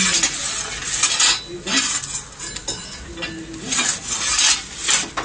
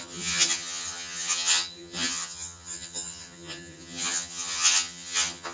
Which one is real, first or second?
first